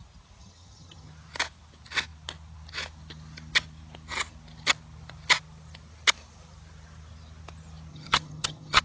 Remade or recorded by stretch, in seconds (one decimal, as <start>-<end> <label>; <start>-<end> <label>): 0.0-0.4 recorded; 0.4-1.1 remade; 1.1-7.9 recorded; 7.9-8.8 remade